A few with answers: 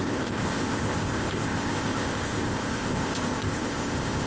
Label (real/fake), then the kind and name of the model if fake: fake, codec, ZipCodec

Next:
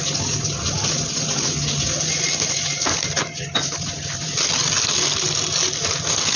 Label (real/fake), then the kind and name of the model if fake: real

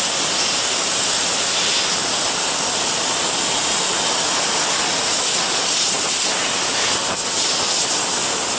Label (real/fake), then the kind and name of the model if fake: real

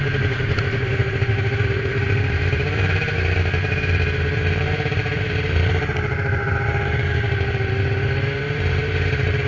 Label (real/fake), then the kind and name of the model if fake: fake, vocoder, BigVGAN v2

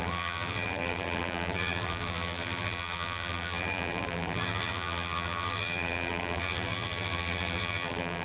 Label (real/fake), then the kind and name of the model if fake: fake, vocoder, BigVGAN v2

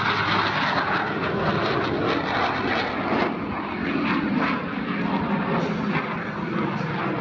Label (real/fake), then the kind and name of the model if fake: real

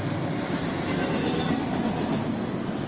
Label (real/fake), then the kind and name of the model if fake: real